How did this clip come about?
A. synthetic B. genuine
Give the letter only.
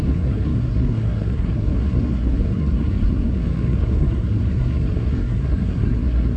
A